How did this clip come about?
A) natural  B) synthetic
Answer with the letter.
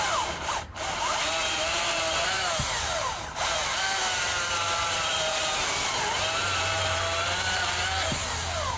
B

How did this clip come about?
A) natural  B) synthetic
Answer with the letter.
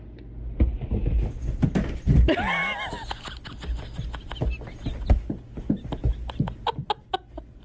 A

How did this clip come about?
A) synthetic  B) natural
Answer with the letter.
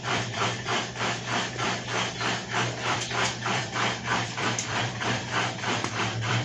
A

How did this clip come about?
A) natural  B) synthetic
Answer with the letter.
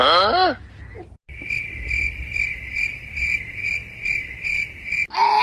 A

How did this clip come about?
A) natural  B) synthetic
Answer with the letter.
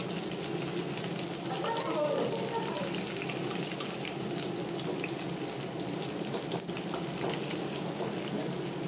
A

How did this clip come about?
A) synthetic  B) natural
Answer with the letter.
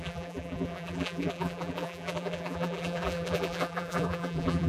A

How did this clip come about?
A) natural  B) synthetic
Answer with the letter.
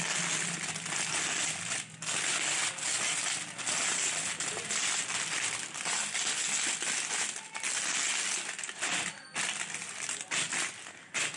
A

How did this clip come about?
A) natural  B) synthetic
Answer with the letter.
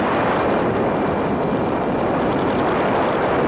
B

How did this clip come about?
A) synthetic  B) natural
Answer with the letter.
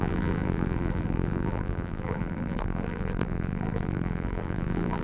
A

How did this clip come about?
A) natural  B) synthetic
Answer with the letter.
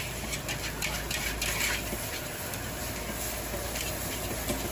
A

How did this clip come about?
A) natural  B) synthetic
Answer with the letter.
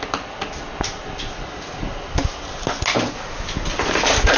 A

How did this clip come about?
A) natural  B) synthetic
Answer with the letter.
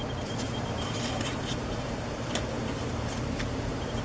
B